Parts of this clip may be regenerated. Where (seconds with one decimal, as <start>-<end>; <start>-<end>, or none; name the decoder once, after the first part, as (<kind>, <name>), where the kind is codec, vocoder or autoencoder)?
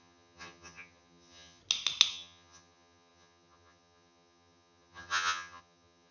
0.0-1.6 (vocoder, HiFi-GAN); 2.1-6.1